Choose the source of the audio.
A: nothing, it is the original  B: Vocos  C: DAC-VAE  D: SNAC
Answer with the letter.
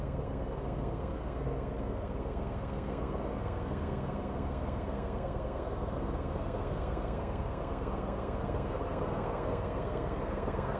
D